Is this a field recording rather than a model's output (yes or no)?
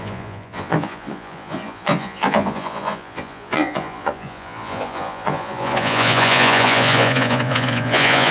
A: no